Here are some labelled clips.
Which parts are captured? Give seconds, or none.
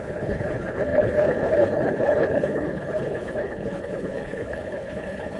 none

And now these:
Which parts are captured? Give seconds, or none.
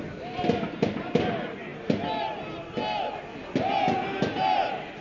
0.0-5.0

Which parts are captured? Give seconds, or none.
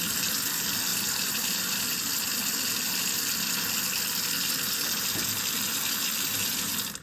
0.0-0.9; 1.8-7.0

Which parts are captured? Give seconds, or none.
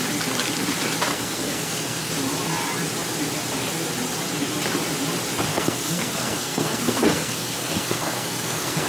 0.0-1.1; 2.1-5.5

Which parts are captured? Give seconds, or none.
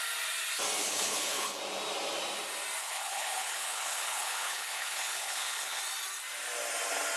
0.0-0.8; 1.6-2.8; 5.8-7.2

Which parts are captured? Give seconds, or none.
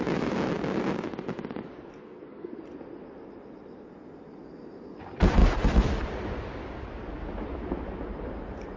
0.0-2.0; 2.6-8.8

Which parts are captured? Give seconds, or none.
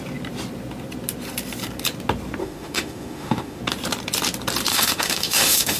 0.0-2.4; 3.6-4.7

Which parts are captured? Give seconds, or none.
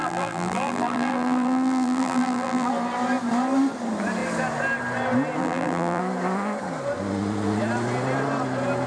2.7-5.4; 6.0-8.9